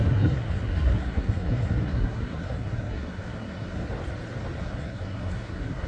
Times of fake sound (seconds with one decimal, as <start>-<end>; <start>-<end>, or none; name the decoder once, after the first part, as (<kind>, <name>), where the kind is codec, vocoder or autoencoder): 0.0-3.8 (codec, SNAC); 4.6-5.9